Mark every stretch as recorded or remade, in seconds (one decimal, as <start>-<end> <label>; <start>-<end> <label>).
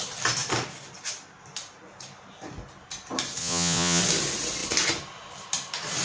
0.0-3.4 recorded; 3.4-4.0 remade; 4.0-6.0 recorded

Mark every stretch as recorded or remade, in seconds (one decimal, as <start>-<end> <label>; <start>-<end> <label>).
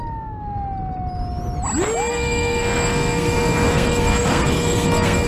0.0-2.1 recorded; 2.1-5.3 remade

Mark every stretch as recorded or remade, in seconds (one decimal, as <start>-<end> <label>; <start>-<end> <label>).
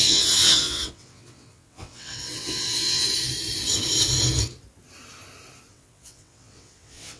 0.0-3.0 remade; 3.0-5.7 recorded; 5.7-7.2 remade